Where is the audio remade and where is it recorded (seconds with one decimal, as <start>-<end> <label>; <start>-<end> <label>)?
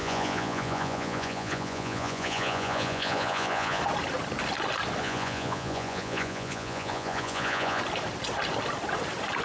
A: 0.0-3.8 remade; 3.8-5.0 recorded; 5.0-7.8 remade; 7.8-9.4 recorded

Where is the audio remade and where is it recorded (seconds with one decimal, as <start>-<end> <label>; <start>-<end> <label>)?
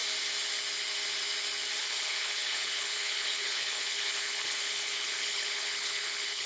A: 0.0-1.8 recorded; 1.8-6.5 remade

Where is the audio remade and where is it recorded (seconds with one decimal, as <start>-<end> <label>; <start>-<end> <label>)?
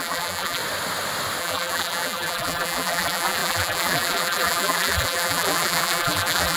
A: 0.0-0.6 remade; 0.6-1.4 recorded; 1.4-6.6 remade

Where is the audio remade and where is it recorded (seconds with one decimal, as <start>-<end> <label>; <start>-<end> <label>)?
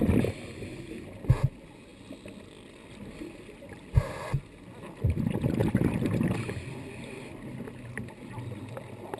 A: 0.0-9.2 recorded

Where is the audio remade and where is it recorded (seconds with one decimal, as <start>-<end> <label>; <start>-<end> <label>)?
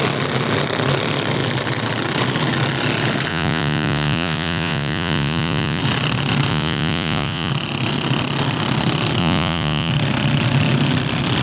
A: 0.0-3.3 recorded; 3.3-5.8 remade; 5.8-6.5 recorded; 6.5-7.5 remade; 7.5-9.2 recorded; 9.2-9.9 remade; 9.9-11.4 recorded